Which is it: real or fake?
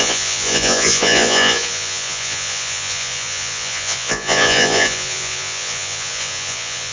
fake